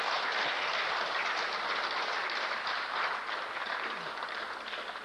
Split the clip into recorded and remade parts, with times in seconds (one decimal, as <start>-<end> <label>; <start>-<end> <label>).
0.0-2.2 recorded; 2.2-2.9 remade; 2.9-3.6 recorded; 3.6-4.2 remade; 4.2-5.0 recorded